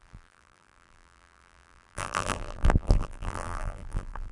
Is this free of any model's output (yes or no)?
no